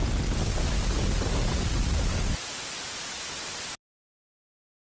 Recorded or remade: recorded